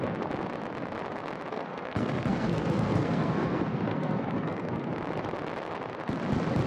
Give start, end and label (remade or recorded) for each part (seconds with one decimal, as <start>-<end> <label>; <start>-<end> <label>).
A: 0.0-1.5 recorded; 1.5-4.9 remade; 4.9-6.7 recorded